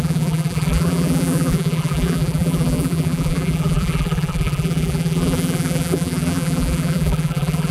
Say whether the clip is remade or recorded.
remade